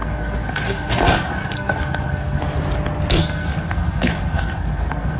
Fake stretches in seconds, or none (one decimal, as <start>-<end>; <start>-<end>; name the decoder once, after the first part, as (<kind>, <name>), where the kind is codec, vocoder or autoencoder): 0.0-2.4 (codec, SNAC); 3.2-5.2